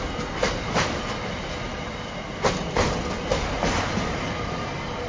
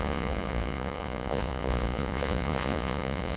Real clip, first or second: first